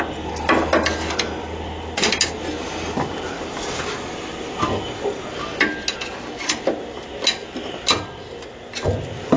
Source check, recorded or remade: recorded